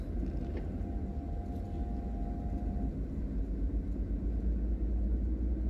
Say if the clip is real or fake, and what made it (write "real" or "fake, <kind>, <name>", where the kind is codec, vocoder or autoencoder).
real